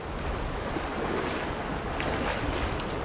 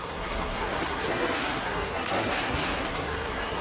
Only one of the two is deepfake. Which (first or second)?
second